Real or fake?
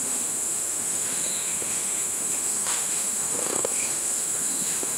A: fake